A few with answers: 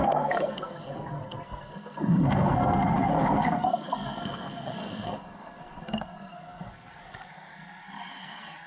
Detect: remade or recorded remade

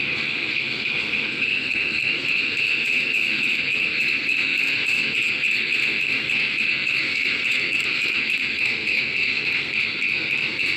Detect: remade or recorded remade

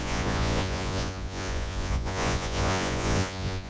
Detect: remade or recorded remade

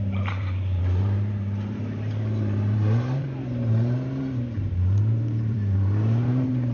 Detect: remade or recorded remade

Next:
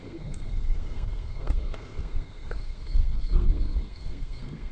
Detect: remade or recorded remade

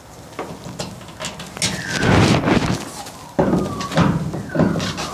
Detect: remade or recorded recorded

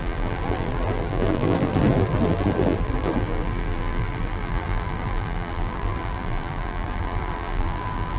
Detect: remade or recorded remade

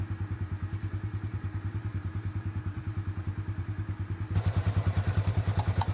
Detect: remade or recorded remade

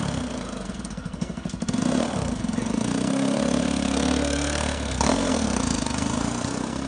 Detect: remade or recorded remade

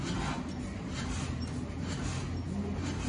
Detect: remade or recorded recorded